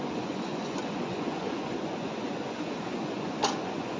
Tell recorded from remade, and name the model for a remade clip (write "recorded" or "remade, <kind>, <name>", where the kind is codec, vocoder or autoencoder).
remade, vocoder, Vocos